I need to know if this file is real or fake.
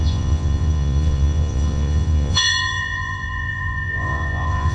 fake